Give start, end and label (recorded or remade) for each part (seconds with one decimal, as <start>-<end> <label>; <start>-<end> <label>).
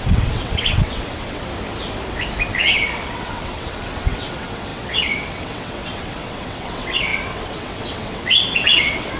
0.0-1.5 remade; 1.5-2.6 recorded; 2.6-9.2 remade